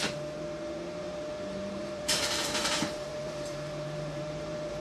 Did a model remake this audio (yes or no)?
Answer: yes